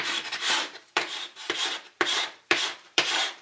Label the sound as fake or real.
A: fake